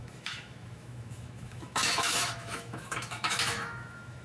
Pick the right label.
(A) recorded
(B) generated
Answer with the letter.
B